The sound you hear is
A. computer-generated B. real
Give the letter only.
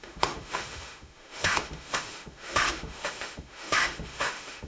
A